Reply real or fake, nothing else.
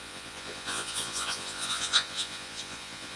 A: fake